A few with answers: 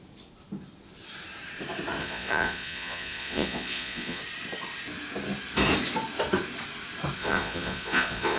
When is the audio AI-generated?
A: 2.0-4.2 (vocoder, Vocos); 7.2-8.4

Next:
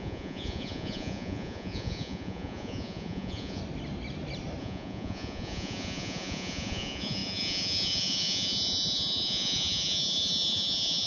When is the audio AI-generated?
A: 0.0-3.6 (vocoder, Vocos); 4.6-11.1

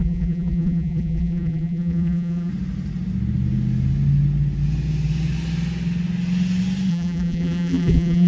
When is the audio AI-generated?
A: 0.0-2.5 (vocoder, BigVGAN v2); 6.9-8.3

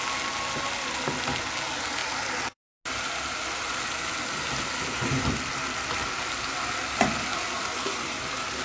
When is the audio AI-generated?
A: none

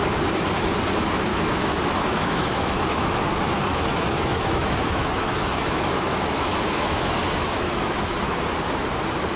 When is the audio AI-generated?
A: 1.3-2.8 (autoencoder, DAC-VAE); 3.7-8.4

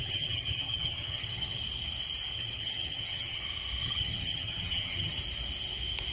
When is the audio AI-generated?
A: 0.0-1.6 (vocoder, HiFi-GAN); 2.3-3.4; 3.8-5.2

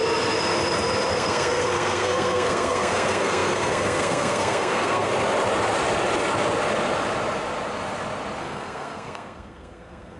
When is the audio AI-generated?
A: 1.1-5.1 (codec, SNAC); 8.4-10.2

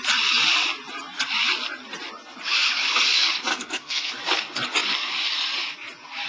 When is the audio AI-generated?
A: 3.5-4.1 (codec, SNAC)